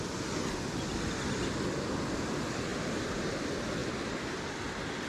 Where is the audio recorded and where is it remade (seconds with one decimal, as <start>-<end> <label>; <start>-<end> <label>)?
0.0-2.7 recorded; 2.7-3.4 remade; 3.4-5.1 recorded